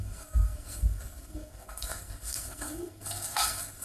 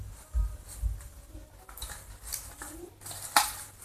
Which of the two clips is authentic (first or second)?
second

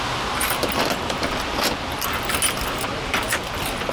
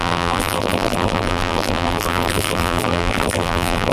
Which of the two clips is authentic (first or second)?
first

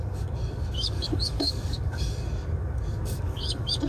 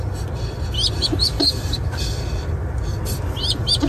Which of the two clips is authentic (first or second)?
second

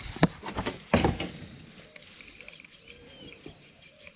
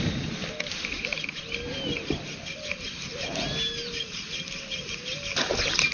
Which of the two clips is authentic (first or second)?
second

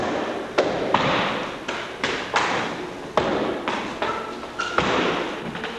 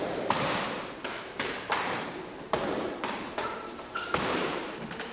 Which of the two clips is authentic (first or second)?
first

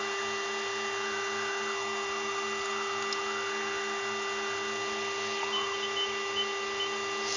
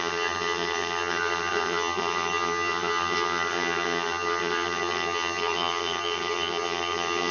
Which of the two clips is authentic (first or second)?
first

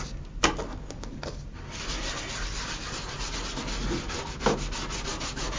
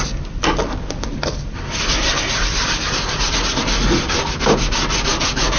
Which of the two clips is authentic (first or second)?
first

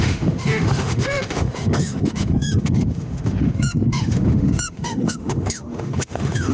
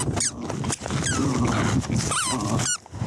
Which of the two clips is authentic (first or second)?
second